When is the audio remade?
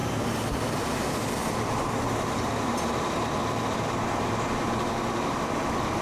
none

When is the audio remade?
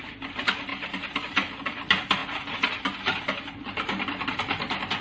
0.7-1.5 (vocoder, BigVGAN v2)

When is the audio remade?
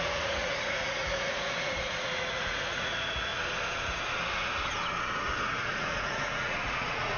0.0-3.3 (vocoder, Vocos); 5.4-7.2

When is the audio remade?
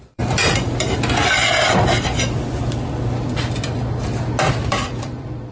0.0-1.4 (vocoder, BigVGAN v2); 4.7-5.5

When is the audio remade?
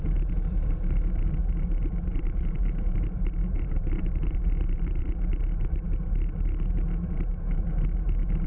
2.1-5.0 (vocoder, BigVGAN v2)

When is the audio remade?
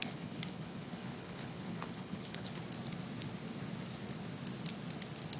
0.0-2.6 (codec, HILCodec)